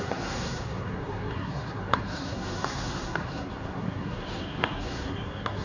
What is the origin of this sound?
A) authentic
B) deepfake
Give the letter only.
B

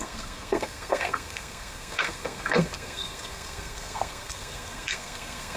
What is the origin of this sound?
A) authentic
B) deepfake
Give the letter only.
B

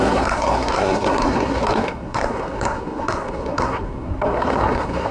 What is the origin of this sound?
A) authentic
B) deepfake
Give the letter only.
B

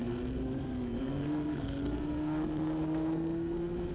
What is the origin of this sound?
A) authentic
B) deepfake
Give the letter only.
B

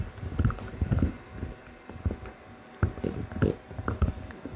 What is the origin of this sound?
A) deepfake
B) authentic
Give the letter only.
B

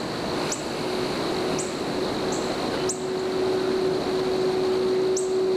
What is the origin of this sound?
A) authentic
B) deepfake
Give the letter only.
A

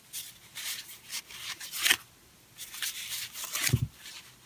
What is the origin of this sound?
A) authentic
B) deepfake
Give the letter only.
A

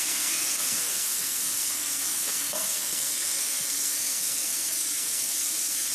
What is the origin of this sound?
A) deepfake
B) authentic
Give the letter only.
A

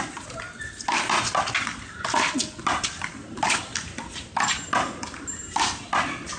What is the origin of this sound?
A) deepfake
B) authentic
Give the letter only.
B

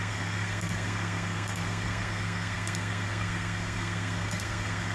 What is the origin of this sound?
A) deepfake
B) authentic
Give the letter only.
A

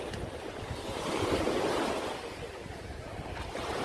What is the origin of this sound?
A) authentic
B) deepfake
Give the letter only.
A